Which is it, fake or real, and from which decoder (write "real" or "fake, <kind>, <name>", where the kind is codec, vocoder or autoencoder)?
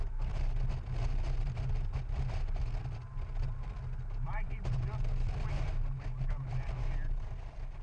real